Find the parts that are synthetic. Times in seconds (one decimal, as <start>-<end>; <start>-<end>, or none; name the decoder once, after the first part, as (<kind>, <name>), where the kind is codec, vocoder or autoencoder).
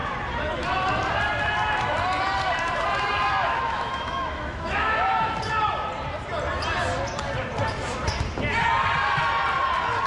3.4-5.1 (autoencoder, DAC-VAE)